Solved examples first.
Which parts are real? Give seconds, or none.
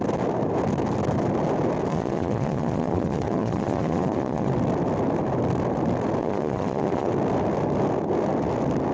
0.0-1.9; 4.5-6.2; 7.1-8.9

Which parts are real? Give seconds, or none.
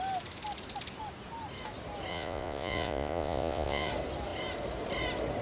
0.0-2.1; 3.9-5.4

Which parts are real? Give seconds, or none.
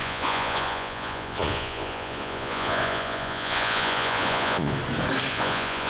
4.8-5.3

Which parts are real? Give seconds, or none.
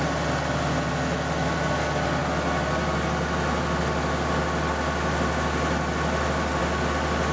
0.0-7.3